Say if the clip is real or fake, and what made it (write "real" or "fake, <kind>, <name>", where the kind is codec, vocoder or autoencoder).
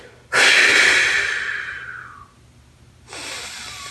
real